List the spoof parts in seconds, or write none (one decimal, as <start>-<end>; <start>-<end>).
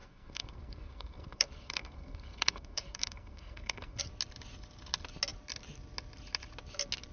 0.0-4.0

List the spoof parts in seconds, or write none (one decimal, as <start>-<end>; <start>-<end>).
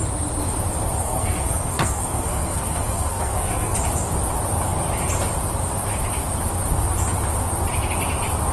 1.0-3.8